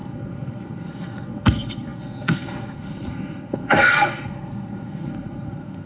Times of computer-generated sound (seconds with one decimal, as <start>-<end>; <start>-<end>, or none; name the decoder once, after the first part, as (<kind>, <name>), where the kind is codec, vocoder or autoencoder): 0.0-5.9 (codec, SNAC)